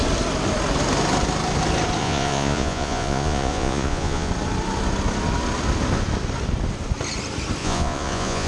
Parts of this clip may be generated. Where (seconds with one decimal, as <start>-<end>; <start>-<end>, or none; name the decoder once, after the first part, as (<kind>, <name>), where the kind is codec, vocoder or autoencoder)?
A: 2.0-4.3 (vocoder, Vocos); 7.6-8.5